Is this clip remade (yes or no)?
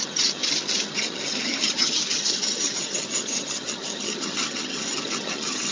yes